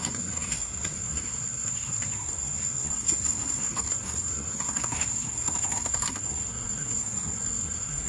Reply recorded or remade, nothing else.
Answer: remade